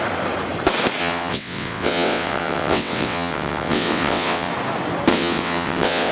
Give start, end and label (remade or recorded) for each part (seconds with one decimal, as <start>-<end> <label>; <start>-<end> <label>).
0.0-1.0 recorded; 1.0-4.5 remade; 4.5-5.1 recorded; 5.1-6.1 remade